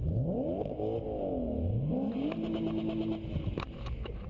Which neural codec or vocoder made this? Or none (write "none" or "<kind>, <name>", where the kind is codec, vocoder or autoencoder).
none